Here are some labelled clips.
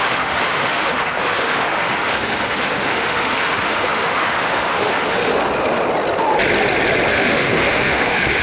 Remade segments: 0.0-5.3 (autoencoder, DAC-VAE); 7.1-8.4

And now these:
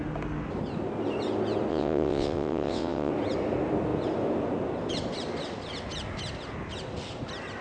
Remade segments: 1.7-3.1 (vocoder, WaveNeXt)

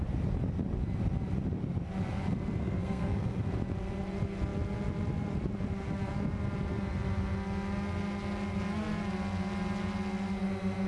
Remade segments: 2.6-3.4 (codec, SNAC)